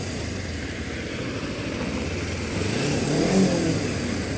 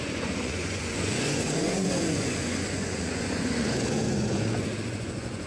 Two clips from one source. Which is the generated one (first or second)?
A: second